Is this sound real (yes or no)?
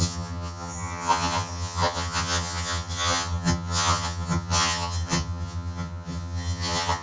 no